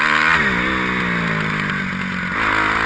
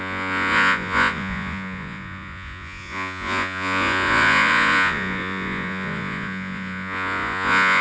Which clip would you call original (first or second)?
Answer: first